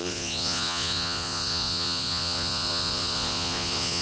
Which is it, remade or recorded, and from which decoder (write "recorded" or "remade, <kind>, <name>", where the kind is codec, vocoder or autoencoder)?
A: remade, vocoder, Vocos